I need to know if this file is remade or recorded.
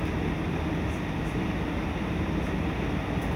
recorded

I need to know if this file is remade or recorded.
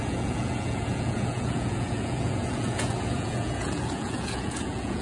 remade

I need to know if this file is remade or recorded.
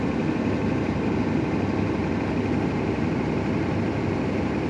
recorded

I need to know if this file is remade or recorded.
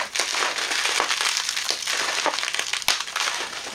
recorded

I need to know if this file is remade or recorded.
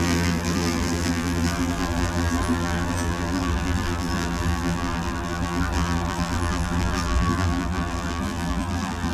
remade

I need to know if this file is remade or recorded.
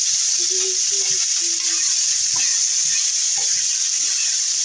recorded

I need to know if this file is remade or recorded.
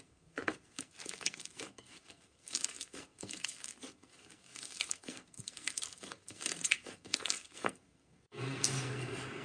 remade